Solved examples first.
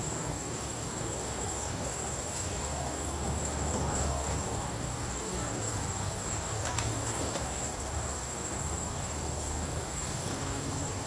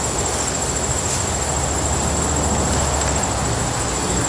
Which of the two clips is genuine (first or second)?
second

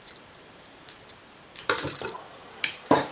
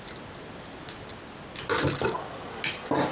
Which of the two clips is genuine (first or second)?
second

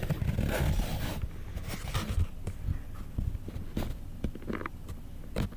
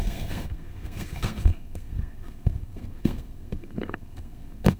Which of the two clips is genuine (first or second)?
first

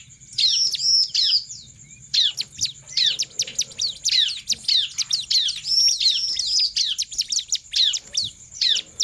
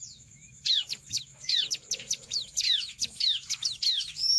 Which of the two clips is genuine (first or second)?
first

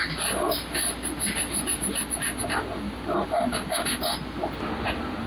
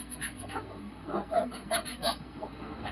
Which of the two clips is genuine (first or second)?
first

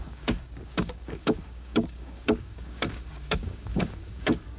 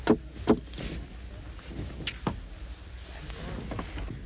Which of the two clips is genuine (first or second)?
second